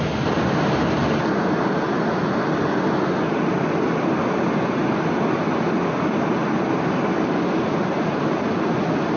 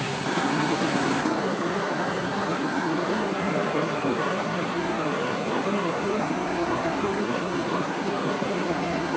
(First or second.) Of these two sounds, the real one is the first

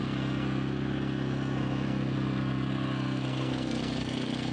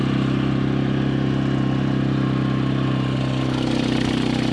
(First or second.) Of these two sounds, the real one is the second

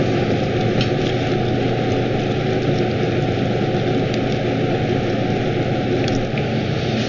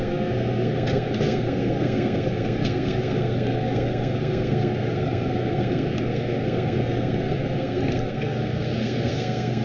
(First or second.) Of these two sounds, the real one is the first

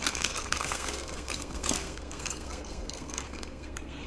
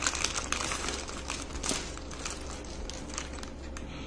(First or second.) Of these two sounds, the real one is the second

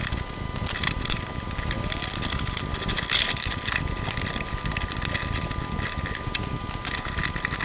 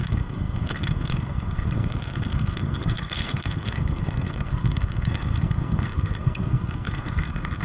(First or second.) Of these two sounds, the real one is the first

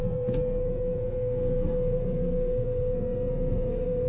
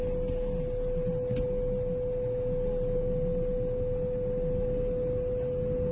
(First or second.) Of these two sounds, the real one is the second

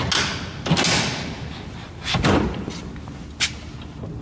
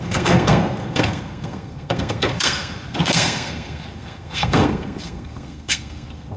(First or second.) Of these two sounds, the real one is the first